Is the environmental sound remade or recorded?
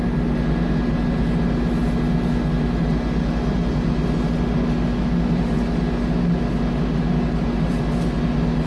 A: recorded